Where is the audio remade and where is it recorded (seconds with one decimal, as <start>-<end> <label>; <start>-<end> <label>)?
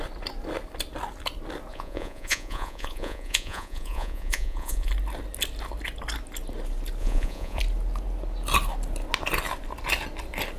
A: 0.0-1.7 recorded; 1.7-4.9 remade; 4.9-7.0 recorded; 7.0-7.6 remade; 7.6-10.6 recorded